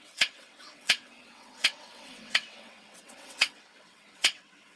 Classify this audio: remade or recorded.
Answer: remade